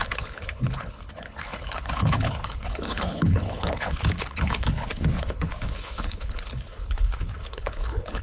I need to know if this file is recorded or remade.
remade